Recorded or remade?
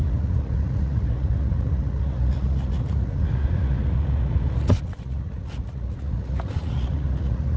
remade